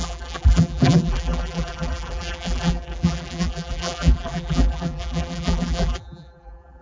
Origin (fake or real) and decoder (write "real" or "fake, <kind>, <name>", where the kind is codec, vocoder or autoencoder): fake, vocoder, BigVGAN v2